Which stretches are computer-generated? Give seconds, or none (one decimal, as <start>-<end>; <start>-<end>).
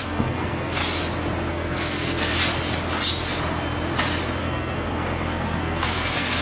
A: 0.0-0.8; 1.5-2.3; 4.4-6.4